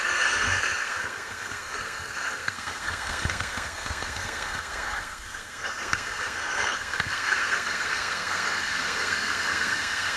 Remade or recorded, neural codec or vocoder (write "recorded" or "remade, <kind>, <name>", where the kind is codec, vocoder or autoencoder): remade, codec, SNAC